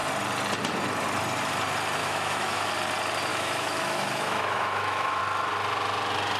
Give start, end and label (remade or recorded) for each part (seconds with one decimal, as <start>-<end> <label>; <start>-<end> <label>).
0.0-2.0 recorded; 2.0-2.7 remade; 2.7-3.3 recorded; 3.3-5.2 remade; 5.2-6.4 recorded